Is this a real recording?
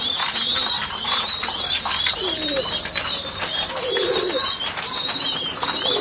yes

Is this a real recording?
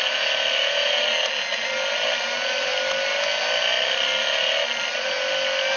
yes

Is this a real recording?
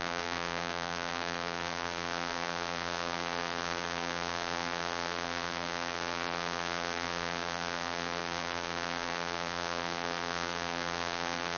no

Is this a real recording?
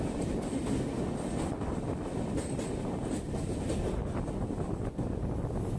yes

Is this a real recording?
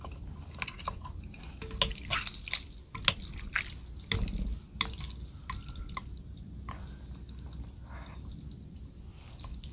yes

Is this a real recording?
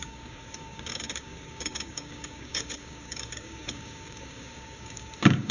no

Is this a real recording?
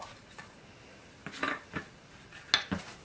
yes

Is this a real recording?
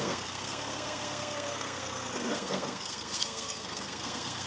no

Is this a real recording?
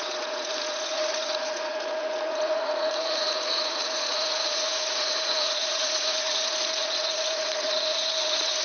no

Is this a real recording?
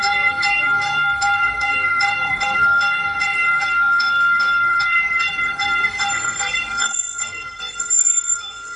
no